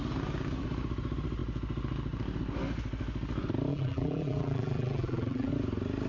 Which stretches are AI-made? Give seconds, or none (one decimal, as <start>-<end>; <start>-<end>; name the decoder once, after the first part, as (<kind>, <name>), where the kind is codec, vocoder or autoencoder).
3.7-5.5 (vocoder, BigVGAN v2)